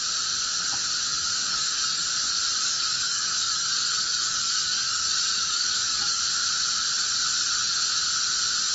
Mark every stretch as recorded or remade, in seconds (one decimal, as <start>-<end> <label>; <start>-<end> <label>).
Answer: 0.0-1.1 recorded; 1.1-2.0 remade; 2.0-2.6 recorded; 2.6-6.2 remade; 6.2-8.7 recorded